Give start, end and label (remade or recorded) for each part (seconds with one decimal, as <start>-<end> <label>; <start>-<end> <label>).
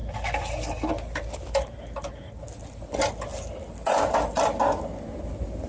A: 0.0-5.7 recorded